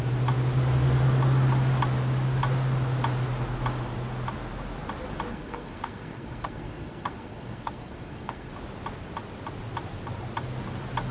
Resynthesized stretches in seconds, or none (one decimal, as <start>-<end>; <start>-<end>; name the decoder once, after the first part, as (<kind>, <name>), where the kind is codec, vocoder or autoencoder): 5.3-8.5 (codec, SNAC)